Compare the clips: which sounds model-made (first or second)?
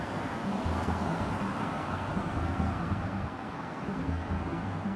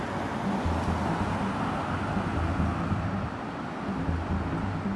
first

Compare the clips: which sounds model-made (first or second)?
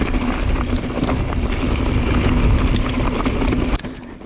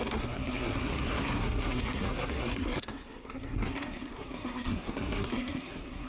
second